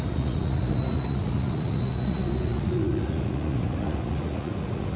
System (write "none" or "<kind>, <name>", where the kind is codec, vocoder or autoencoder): vocoder, Vocos